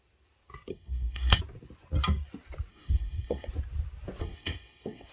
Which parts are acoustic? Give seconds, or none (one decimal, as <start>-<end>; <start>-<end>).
0.0-0.7; 1.4-2.7; 3.5-4.2